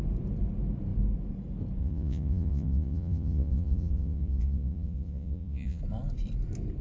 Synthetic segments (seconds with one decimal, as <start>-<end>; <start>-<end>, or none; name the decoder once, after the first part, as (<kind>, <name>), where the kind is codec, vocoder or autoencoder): 1.8-5.8 (vocoder, Vocos)